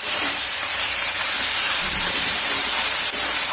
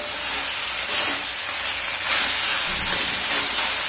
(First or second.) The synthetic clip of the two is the first